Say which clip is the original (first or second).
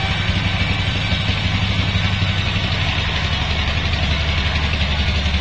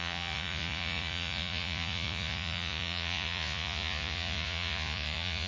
first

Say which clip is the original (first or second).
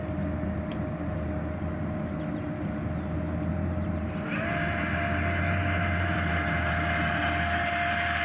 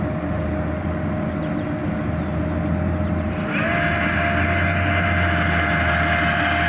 second